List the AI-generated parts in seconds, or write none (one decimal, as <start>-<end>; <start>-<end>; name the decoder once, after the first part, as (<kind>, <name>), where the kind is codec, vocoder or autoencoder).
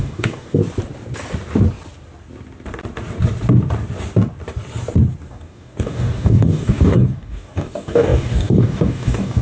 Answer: 0.0-0.6 (codec, DAC); 5.3-9.4